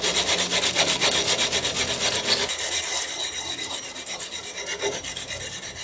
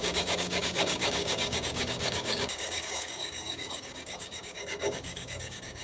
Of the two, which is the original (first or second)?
first